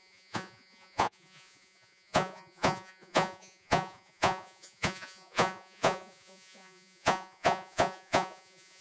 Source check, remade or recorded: remade